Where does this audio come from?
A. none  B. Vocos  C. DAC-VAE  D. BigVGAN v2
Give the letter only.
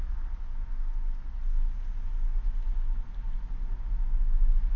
A